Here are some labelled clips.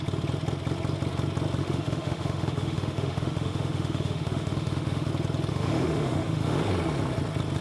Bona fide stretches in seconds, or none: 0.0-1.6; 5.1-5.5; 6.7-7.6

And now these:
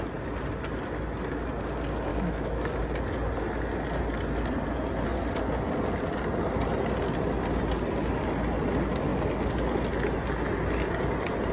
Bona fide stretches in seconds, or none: 0.0-2.1; 2.7-11.5

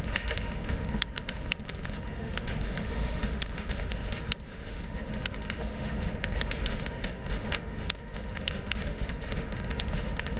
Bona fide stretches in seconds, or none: none

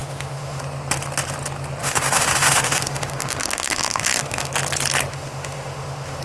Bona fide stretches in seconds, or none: 0.6-1.8; 4.5-5.1